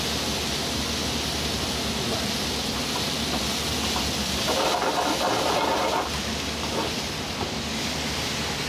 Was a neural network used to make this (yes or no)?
no